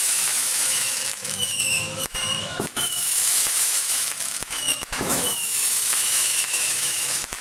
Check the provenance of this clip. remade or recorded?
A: remade